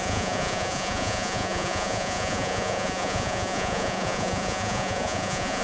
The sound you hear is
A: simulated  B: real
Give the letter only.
A